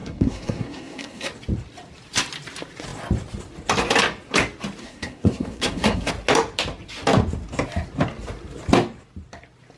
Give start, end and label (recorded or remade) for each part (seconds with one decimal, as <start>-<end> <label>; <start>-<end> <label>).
0.0-1.3 remade; 1.3-4.8 recorded; 4.8-6.1 remade; 6.1-9.8 recorded